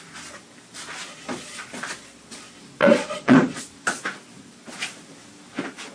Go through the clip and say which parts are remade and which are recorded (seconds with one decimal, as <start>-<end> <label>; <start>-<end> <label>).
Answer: 0.0-2.8 recorded; 2.8-3.6 remade; 3.6-5.9 recorded